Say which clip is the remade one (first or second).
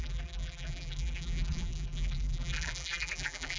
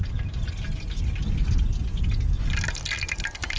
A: first